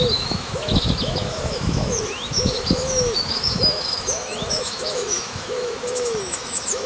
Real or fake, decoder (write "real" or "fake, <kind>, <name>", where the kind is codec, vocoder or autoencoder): fake, autoencoder, DAC-VAE